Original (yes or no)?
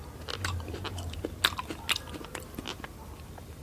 yes